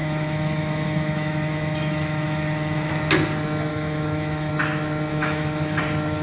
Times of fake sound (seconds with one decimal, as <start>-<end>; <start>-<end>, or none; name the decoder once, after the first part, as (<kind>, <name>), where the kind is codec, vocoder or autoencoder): 0.0-2.9 (autoencoder, DAC-VAE); 3.7-4.5; 5.1-5.8